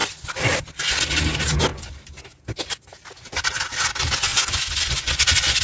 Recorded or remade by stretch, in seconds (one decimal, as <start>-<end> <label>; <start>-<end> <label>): 0.0-4.3 recorded; 4.3-5.6 remade